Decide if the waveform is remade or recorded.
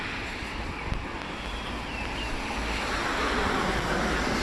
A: recorded